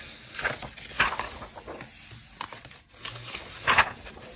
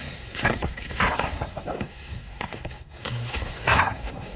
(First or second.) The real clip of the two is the first